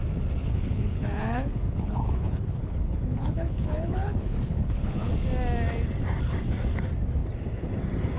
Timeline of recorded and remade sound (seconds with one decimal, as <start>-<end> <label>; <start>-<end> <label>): 0.0-0.4 recorded; 0.4-5.1 remade; 5.1-8.2 recorded